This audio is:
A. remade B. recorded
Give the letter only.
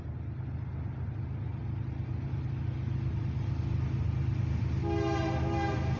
B